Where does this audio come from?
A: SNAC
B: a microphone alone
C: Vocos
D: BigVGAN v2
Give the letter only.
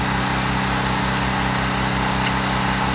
B